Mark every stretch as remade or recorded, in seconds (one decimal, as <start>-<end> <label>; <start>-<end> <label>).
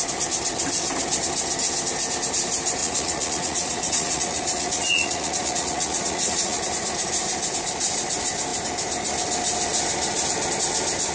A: 0.0-2.8 recorded; 2.8-6.6 remade; 6.6-11.1 recorded